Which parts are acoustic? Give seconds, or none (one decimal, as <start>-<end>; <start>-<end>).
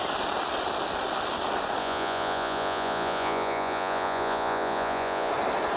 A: 0.0-1.8; 5.3-5.8